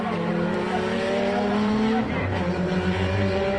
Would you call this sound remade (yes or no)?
yes